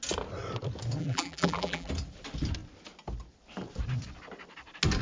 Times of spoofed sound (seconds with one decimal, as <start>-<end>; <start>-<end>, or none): 1.0-1.9